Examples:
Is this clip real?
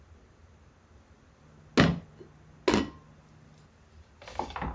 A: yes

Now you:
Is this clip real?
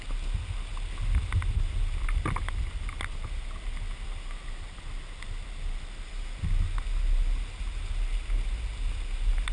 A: yes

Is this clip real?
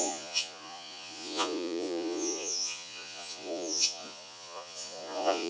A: no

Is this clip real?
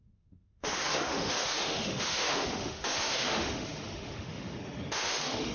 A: no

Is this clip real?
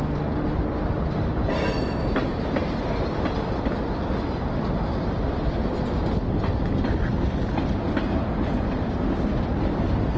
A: yes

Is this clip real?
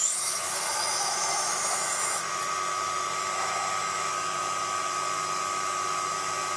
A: no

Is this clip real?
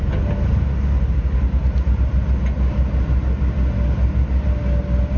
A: yes